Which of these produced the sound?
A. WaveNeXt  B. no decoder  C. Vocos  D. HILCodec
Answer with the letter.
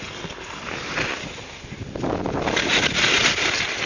B